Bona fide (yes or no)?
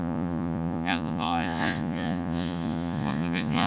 no